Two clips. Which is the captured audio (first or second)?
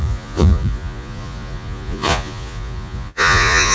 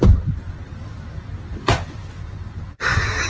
second